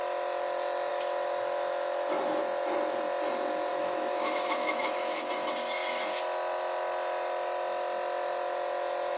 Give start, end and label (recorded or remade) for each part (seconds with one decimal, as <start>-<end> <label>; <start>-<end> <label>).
0.0-0.9 recorded; 0.9-2.4 remade; 2.4-3.7 recorded; 3.7-5.3 remade; 5.3-9.2 recorded